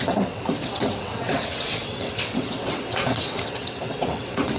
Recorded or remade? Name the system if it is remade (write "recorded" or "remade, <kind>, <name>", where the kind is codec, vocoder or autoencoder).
remade, vocoder, WaveNeXt